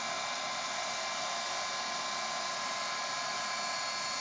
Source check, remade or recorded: recorded